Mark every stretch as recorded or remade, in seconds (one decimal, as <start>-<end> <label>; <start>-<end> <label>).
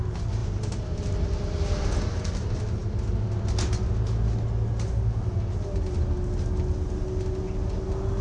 0.0-0.4 recorded; 0.4-1.6 remade; 1.6-8.2 recorded